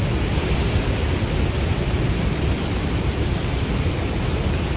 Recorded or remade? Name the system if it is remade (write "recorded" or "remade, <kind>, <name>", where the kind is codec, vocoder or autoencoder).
recorded